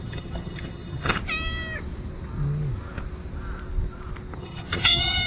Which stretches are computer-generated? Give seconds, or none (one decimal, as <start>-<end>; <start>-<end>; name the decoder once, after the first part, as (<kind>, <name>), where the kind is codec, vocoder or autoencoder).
0.0-1.2 (vocoder, HiFi-GAN); 4.4-5.3